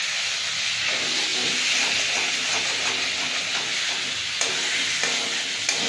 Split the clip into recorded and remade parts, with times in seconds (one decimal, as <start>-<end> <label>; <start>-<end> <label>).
0.0-5.9 recorded